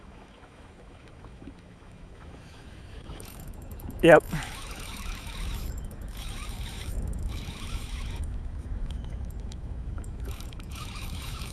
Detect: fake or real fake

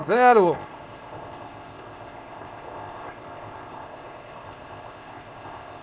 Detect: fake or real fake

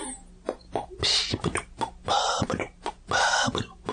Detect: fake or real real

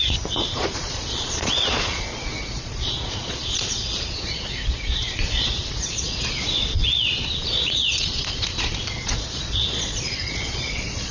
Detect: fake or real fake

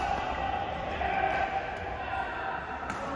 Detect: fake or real real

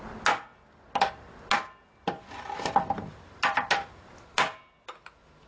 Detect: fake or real real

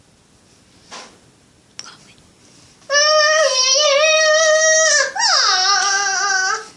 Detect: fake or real real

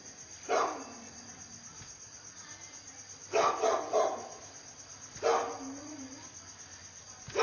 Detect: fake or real real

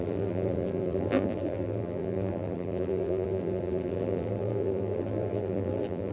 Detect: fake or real fake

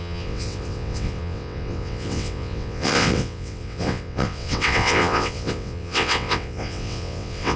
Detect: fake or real fake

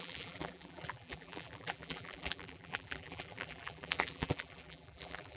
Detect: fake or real fake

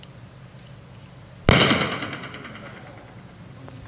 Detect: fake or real real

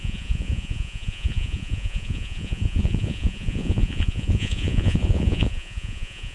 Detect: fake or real fake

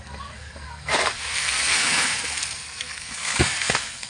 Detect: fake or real fake